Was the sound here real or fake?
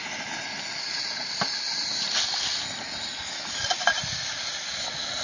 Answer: real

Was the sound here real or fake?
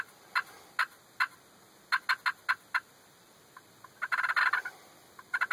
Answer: real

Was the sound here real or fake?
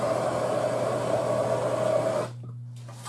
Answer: real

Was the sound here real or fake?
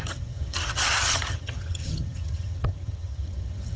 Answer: fake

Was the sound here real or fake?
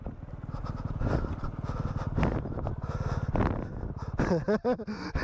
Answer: real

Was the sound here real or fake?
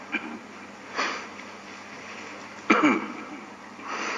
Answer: real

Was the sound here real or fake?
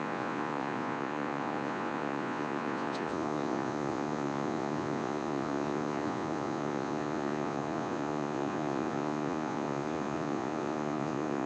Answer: fake